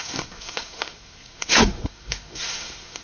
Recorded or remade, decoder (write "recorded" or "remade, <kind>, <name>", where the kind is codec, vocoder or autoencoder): remade, codec, SNAC